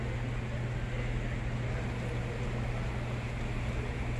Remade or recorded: recorded